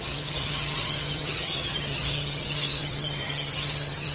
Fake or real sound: fake